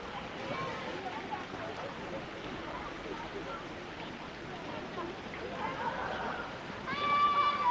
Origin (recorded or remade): recorded